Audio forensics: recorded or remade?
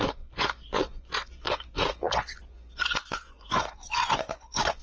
remade